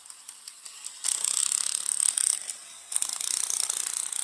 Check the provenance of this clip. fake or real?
real